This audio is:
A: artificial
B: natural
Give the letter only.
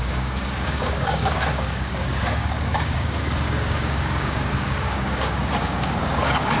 A